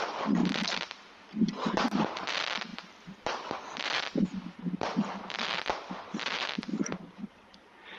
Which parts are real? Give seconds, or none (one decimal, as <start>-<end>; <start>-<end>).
0.0-2.7; 5.5-6.2